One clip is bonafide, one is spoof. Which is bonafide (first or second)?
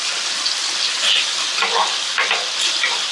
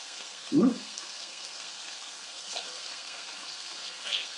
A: first